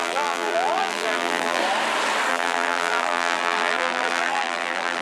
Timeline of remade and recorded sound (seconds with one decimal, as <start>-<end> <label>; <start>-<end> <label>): 0.0-1.6 remade; 1.6-2.3 recorded; 2.3-5.0 remade